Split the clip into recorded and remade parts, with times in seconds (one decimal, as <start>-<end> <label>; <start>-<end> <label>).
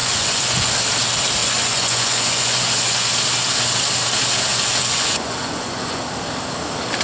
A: 0.0-0.7 remade; 0.7-1.4 recorded; 1.4-3.1 remade; 3.1-4.5 recorded; 4.5-6.0 remade; 6.0-7.0 recorded